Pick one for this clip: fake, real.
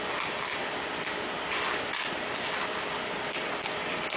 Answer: real